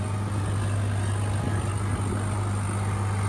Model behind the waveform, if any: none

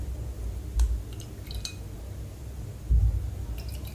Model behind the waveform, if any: none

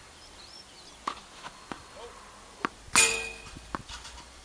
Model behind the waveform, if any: none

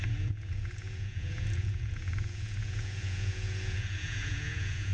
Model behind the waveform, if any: vocoder, Vocos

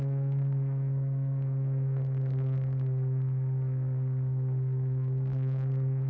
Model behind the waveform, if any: codec, SNAC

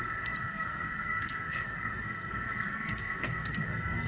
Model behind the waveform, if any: codec, SNAC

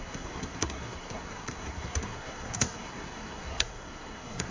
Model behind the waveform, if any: codec, SNAC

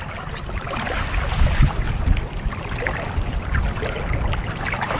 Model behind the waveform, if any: none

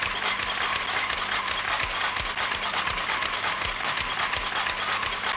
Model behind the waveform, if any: none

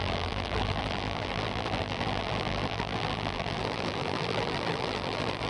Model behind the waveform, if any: vocoder, BigVGAN v2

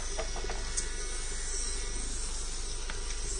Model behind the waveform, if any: none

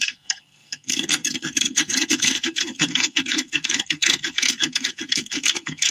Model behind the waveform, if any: codec, SNAC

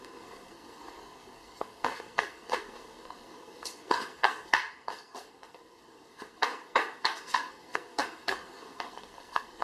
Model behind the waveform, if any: codec, SNAC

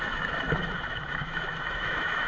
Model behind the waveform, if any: autoencoder, DAC-VAE